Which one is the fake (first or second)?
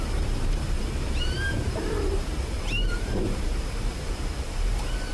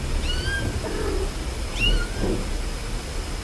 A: first